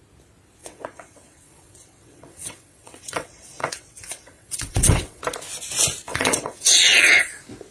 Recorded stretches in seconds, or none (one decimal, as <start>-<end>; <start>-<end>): 0.0-0.6; 5.2-6.1; 7.2-7.7